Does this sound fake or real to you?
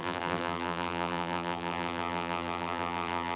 fake